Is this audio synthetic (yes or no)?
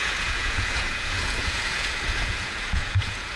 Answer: yes